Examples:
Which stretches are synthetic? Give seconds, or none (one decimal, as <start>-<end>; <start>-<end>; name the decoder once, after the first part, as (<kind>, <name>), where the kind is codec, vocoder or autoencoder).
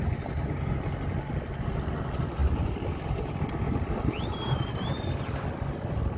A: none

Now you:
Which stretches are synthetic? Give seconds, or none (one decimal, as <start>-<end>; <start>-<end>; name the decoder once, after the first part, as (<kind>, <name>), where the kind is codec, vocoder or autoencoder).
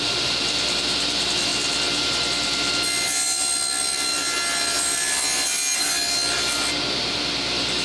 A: none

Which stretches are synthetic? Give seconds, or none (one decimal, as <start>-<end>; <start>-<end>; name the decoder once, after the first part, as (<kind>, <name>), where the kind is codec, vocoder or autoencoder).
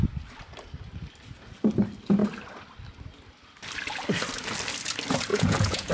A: 5.3-5.9 (vocoder, Vocos)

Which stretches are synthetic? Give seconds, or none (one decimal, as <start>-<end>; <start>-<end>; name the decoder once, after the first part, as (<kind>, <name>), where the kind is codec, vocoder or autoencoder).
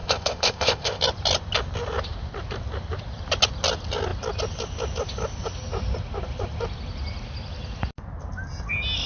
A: 0.0-1.0 (codec, ZipCodec)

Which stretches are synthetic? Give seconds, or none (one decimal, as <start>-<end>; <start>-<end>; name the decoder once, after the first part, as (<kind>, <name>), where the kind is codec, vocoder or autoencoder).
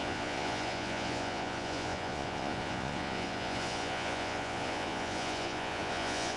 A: 0.0-6.4 (vocoder, Vocos)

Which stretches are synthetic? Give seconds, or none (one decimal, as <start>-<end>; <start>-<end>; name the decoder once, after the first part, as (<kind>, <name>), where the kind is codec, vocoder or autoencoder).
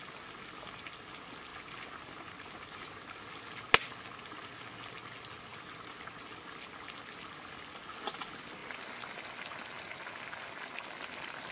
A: none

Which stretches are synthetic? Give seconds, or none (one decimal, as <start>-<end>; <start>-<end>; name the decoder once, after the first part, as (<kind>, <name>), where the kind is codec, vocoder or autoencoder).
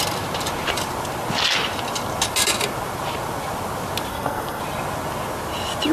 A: 4.1-4.6 (codec, SNAC)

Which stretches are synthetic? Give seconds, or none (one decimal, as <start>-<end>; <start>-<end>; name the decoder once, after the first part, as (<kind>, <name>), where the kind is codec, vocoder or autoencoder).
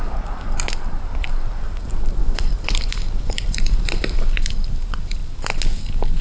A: 2.2-4.4 (vocoder, BigVGAN v2)